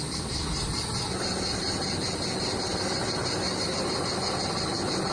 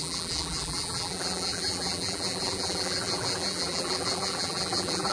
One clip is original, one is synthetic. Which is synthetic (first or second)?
second